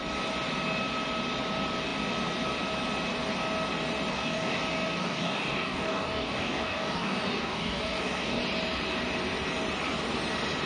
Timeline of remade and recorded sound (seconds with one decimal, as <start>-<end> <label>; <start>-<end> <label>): 0.0-4.1 recorded; 4.1-4.6 remade; 4.6-5.0 recorded; 5.0-8.4 remade; 8.4-10.7 recorded